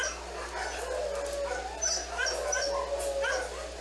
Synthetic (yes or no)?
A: no